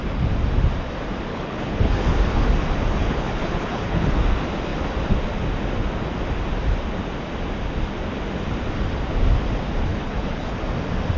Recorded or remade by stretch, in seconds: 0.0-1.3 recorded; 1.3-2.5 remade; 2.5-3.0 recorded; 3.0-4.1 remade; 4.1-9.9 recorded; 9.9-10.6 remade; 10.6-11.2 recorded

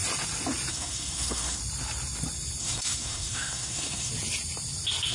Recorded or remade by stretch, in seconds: 0.0-0.7 recorded; 0.7-1.6 remade; 1.6-2.6 recorded; 2.6-4.1 remade; 4.1-5.1 recorded

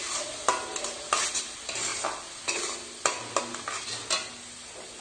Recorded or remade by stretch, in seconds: 0.0-5.0 recorded